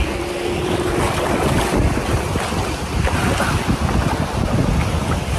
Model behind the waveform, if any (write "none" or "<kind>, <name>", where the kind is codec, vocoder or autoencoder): none